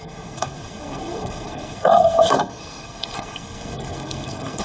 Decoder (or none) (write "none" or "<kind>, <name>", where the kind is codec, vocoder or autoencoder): codec, SNAC